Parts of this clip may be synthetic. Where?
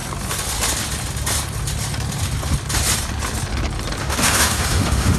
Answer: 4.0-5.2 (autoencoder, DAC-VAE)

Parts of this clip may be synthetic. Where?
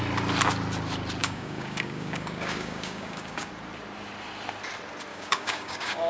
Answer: 1.2-3.5 (codec, DAC); 5.1-6.1